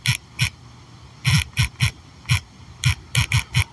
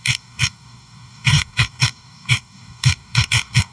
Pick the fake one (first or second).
second